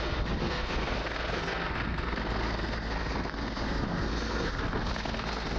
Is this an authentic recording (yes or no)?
no